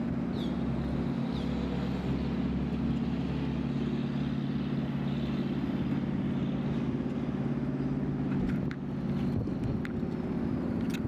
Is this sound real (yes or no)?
yes